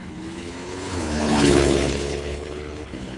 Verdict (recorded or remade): remade